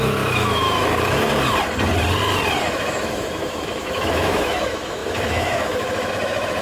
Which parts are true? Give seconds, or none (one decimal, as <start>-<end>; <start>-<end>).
1.3-2.6